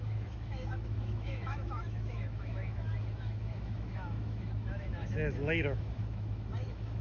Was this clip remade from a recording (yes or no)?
yes